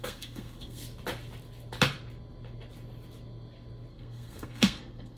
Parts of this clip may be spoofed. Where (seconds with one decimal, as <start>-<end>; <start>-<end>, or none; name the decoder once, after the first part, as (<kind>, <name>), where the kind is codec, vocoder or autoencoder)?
0.0-0.8 (codec, SNAC); 3.9-5.2